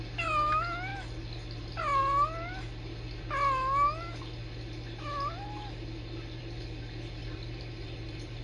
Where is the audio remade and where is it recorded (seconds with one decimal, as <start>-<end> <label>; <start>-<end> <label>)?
0.0-7.2 recorded; 7.2-8.4 remade

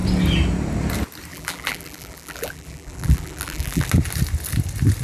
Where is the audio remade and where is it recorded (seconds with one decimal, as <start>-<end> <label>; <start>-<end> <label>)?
0.0-1.3 recorded; 1.3-3.9 remade; 3.9-5.0 recorded

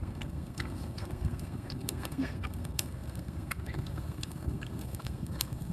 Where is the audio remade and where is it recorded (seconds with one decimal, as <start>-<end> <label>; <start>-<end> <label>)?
0.0-5.7 remade